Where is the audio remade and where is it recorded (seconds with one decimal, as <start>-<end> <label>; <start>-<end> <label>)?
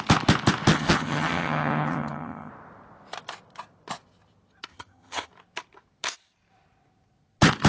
0.0-0.7 recorded; 0.7-2.5 remade; 2.5-4.7 recorded; 4.7-5.3 remade; 5.3-7.7 recorded